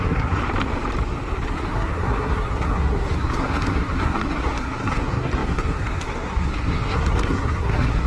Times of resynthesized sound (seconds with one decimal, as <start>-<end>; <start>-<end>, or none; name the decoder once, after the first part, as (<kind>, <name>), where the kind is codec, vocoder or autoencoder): 0.0-0.4 (codec, SNAC); 1.5-8.1